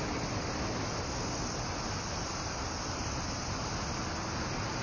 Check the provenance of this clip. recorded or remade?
recorded